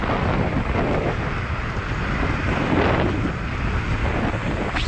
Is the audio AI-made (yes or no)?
no